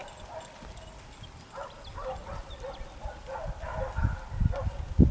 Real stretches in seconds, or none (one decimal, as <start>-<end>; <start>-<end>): 0.0-5.1